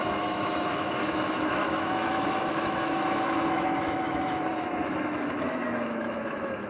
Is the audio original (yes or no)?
no